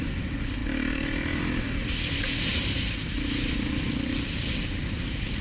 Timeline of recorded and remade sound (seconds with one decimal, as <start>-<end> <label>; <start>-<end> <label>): 0.0-5.4 recorded